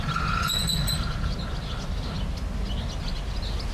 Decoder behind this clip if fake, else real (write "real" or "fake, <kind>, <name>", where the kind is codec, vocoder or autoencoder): real